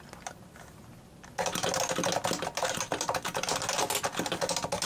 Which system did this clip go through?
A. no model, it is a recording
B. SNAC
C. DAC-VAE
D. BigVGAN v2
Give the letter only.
A